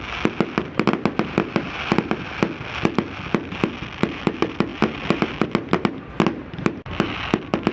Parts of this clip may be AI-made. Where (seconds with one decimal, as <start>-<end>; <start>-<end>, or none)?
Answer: none